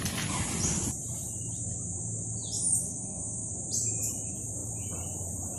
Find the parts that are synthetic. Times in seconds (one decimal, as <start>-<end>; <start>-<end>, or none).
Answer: 2.8-3.5